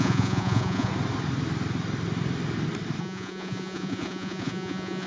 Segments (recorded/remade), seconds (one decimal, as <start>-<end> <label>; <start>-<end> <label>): 0.0-0.9 remade; 0.9-3.0 recorded; 3.0-5.1 remade